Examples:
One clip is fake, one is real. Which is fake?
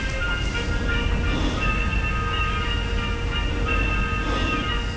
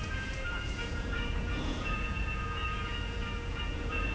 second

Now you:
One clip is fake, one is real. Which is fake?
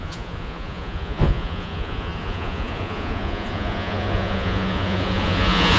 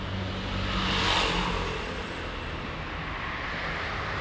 first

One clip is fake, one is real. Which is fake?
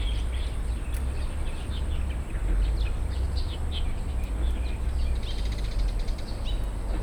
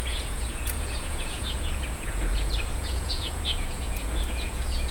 second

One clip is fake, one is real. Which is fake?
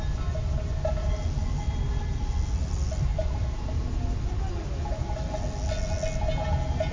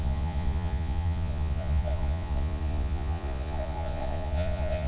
second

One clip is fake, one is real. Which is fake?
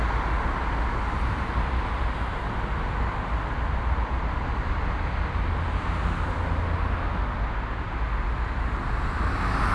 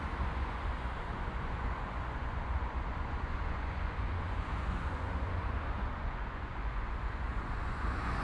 second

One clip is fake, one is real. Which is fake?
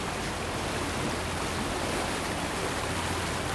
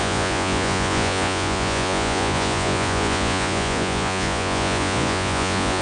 second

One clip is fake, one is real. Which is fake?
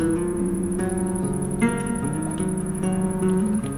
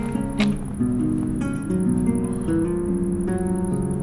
first